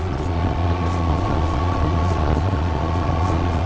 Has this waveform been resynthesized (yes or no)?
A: yes